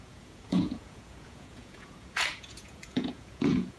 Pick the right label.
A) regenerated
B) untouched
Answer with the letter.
A